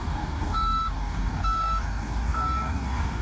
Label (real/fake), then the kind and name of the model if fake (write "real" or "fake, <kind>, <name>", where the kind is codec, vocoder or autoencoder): fake, codec, DAC